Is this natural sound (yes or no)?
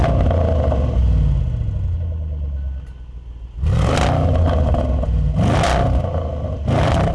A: yes